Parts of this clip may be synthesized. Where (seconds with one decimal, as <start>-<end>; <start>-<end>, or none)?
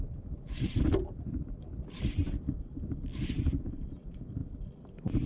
none